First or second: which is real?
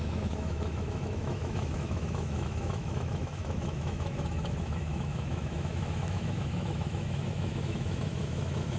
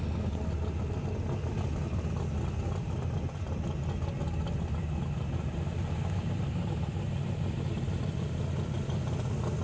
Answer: second